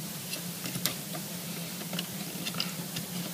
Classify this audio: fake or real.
real